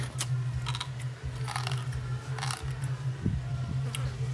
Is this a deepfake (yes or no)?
no